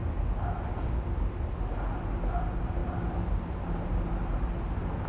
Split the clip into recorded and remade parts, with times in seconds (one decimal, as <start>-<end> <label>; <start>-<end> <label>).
0.0-2.8 recorded; 2.8-4.1 remade; 4.1-5.1 recorded